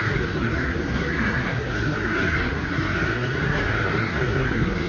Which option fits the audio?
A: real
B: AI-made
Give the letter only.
B